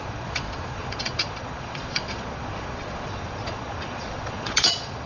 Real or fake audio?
fake